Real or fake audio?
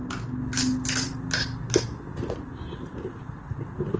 real